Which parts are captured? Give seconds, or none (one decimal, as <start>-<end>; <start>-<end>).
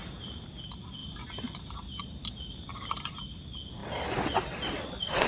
0.0-1.0; 2.9-3.8; 4.3-5.3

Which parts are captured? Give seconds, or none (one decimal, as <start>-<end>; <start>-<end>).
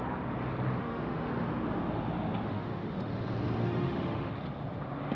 0.0-0.8; 1.3-2.5; 3.1-3.6; 4.3-5.2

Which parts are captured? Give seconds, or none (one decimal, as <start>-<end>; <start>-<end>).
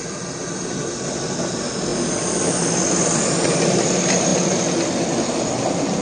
0.0-6.0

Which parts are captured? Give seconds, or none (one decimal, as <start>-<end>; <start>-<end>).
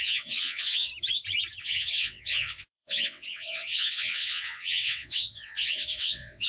0.9-1.6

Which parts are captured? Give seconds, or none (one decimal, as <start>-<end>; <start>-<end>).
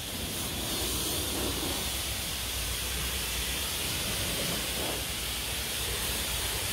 none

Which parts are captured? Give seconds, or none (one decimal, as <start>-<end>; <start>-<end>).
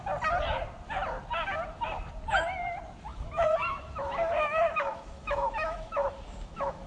0.0-3.1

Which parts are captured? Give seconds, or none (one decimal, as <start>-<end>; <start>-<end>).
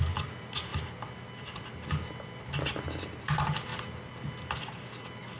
0.0-5.4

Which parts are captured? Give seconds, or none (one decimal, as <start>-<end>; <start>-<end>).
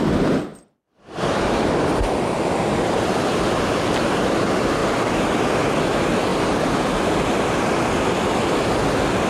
0.0-0.5; 3.6-4.8; 5.8-6.3; 7.8-9.3